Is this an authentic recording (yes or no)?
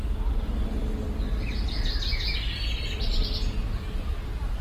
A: yes